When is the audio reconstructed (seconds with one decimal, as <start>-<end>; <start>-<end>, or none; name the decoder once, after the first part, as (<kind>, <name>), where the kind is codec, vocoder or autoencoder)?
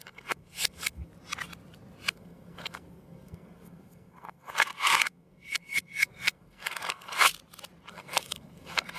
0.0-1.1 (codec, SNAC); 2.1-7.3; 7.9-9.0